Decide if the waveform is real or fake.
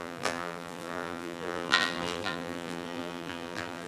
fake